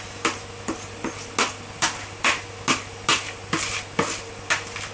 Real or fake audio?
real